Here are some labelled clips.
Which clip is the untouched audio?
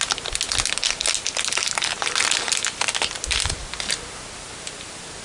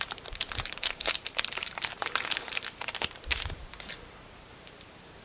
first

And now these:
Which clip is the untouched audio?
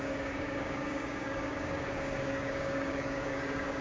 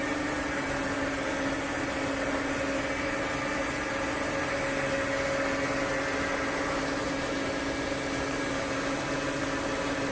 second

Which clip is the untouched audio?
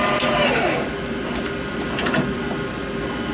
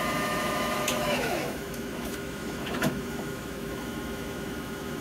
first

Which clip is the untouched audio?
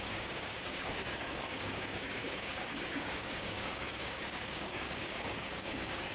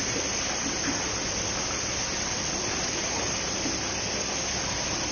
second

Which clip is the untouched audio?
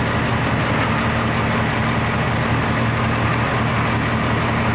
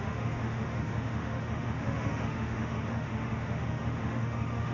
first